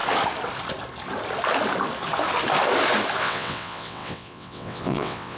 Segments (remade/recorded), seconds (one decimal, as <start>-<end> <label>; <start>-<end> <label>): 0.0-3.2 recorded; 3.2-5.4 remade